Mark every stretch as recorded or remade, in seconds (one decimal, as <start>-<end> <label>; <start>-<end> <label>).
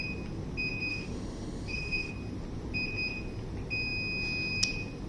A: 0.0-0.9 recorded; 0.9-2.1 remade; 2.1-5.1 recorded